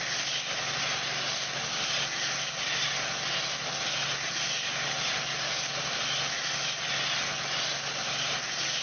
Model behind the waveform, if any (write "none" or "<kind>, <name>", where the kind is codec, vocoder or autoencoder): none